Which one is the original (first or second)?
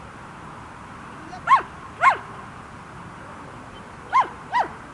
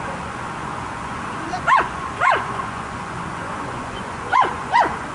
first